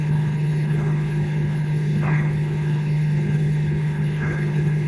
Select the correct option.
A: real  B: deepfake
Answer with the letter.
B